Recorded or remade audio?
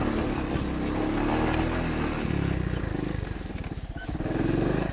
recorded